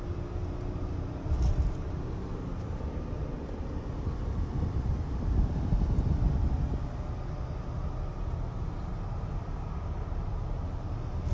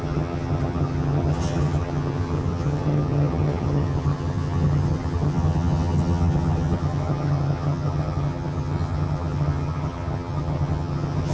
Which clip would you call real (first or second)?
first